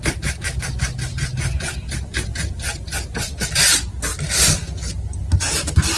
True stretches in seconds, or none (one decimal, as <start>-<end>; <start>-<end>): 0.0-6.0